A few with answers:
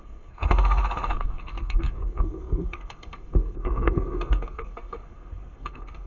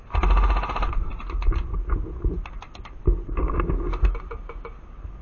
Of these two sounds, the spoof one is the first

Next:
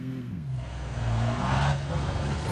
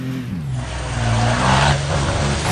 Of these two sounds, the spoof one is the first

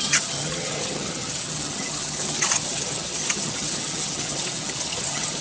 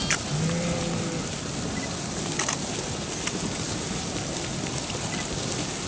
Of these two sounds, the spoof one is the first